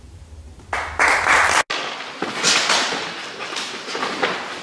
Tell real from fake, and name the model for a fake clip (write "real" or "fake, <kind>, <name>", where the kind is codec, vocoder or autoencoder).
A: real